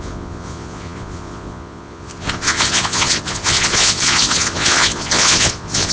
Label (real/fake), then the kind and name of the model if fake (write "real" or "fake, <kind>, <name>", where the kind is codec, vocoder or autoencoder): fake, vocoder, Vocos